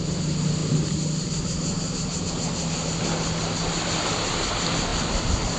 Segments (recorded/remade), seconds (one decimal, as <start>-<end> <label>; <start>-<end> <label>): 0.0-5.6 recorded